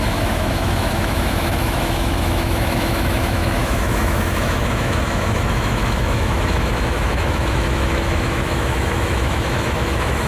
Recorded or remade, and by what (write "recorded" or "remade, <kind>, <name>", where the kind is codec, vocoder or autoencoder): remade, autoencoder, DAC-VAE